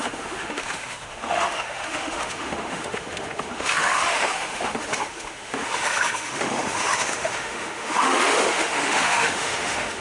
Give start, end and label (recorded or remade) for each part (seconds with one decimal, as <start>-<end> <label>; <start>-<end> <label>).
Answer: 0.0-10.0 remade